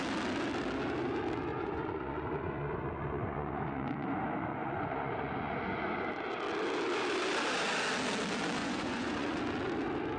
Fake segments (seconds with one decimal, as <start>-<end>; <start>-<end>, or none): 1.5-6.1; 8.6-9.4